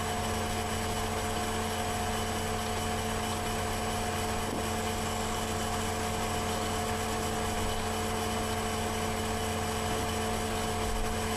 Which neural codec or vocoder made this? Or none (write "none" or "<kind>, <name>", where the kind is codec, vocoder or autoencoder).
none